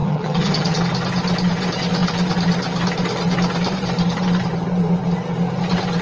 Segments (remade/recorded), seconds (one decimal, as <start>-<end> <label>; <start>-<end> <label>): 0.0-0.8 remade; 0.8-6.0 recorded